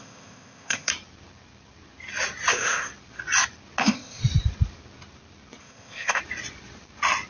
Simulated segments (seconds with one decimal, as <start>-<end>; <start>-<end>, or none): 0.0-0.9; 2.5-2.9; 3.8-4.2; 5.6-6.2